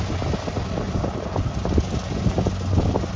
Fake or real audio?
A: real